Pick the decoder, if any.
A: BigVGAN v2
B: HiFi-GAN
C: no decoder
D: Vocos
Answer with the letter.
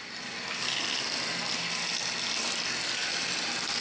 C